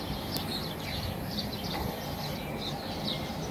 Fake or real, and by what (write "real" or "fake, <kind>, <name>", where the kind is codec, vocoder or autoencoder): fake, vocoder, BigVGAN v2